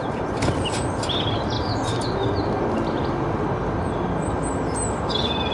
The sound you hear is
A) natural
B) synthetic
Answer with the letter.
A